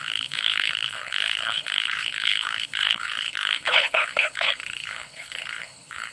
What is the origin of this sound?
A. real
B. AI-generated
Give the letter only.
B